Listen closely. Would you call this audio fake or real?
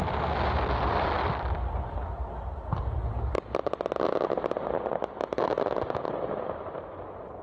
real